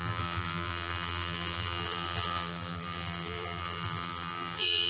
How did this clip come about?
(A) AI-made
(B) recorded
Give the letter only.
A